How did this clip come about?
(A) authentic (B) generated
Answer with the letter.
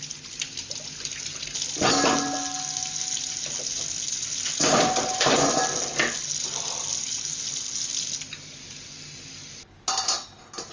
A